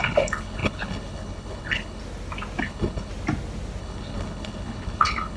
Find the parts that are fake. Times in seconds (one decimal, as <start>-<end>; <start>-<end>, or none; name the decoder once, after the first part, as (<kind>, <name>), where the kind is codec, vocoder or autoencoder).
0.0-2.0 (codec, HILCodec); 2.6-3.1; 3.8-5.4